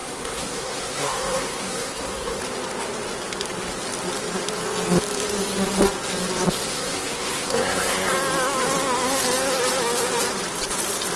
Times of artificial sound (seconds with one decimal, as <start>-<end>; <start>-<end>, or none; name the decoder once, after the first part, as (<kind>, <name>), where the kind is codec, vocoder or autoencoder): 0.0-2.4 (codec, SNAC); 6.7-8.1